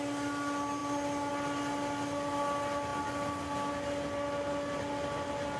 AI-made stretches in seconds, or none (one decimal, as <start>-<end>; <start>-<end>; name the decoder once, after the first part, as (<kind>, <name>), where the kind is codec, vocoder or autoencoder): none